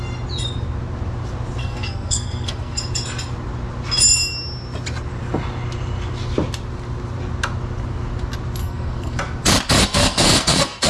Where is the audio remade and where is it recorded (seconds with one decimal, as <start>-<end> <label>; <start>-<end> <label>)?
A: 0.0-1.6 recorded; 1.6-2.8 remade; 2.8-8.6 recorded; 8.6-9.2 remade; 9.2-9.8 recorded; 9.8-10.9 remade